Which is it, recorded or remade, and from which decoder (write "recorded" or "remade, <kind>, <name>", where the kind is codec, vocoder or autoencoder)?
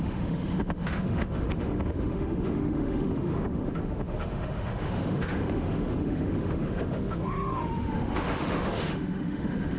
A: remade, autoencoder, DAC-VAE